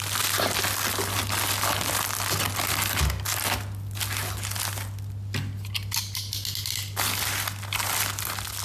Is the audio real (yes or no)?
yes